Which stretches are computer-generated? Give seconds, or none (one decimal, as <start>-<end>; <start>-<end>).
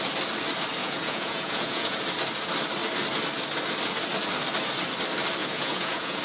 0.8-2.0; 5.4-6.2